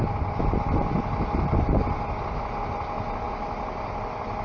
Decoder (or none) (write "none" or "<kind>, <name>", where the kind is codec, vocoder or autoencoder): none